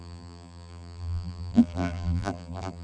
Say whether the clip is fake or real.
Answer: fake